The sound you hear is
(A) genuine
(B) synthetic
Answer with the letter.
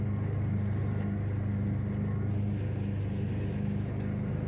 A